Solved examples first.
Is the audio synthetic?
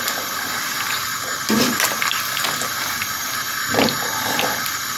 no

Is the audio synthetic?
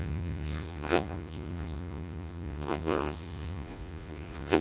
yes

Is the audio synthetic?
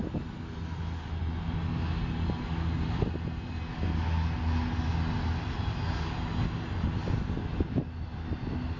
no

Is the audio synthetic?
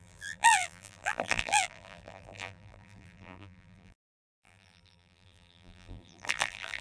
yes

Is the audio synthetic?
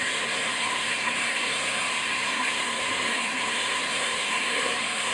yes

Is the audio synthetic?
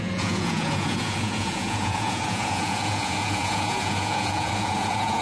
yes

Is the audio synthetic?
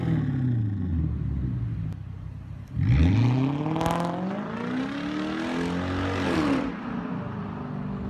no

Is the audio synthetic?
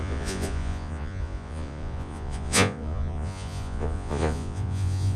yes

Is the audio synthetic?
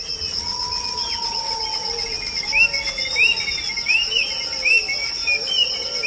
no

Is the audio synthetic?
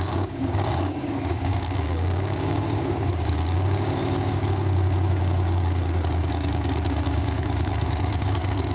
yes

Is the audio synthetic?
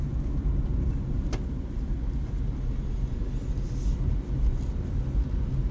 no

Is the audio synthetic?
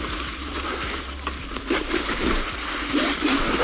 yes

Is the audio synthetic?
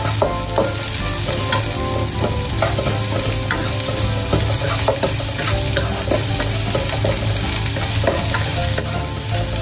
no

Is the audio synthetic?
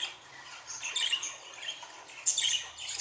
no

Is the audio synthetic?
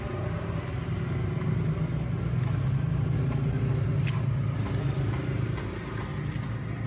no